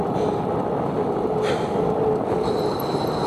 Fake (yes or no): no